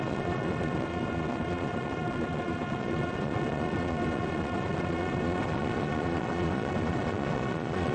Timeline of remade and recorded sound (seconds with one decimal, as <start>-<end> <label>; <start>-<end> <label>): 0.0-7.9 remade